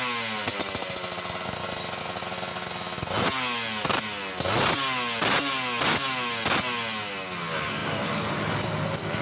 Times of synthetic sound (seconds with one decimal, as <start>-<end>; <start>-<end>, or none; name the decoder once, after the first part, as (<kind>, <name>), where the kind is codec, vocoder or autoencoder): none